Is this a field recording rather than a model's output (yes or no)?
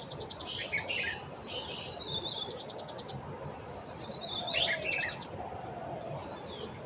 yes